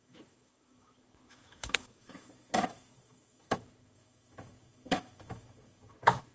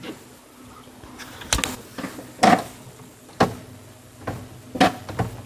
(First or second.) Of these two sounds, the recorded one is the second